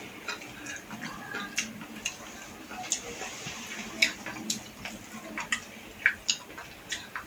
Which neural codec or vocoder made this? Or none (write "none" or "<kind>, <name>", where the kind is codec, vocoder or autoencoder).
none